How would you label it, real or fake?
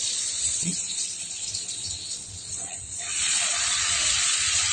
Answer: fake